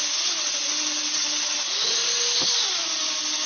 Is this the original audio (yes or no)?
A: yes